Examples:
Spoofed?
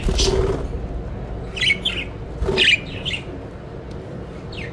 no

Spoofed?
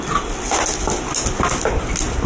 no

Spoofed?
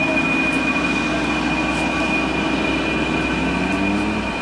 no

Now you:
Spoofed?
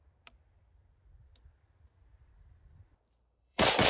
yes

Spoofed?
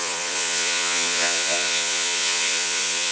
yes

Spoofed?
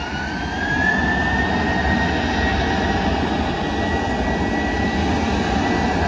no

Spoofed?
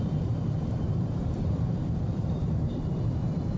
yes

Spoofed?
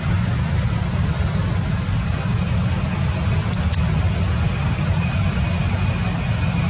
no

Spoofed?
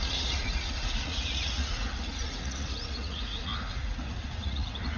yes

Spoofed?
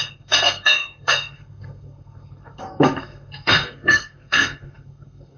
yes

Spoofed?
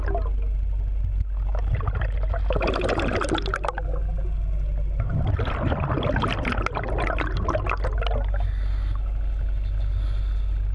no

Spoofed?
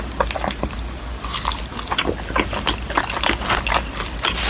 no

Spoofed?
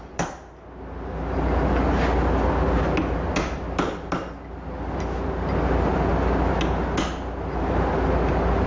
no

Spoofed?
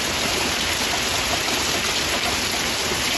no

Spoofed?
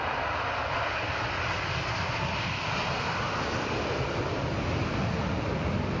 no